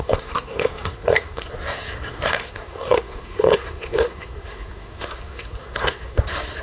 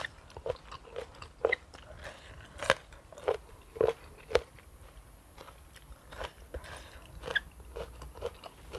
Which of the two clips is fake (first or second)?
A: first